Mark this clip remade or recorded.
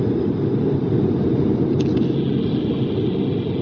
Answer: recorded